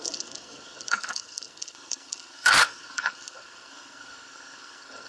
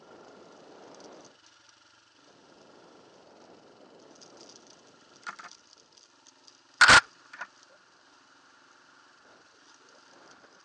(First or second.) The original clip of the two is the second